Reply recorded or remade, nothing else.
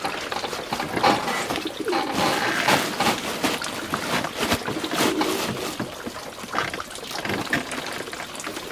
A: recorded